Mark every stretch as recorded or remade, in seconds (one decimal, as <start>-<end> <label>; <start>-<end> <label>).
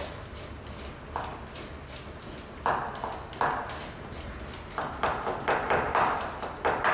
0.0-6.9 recorded